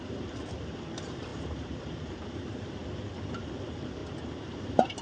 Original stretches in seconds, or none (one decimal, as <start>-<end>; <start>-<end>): 2.8-3.4; 4.0-4.6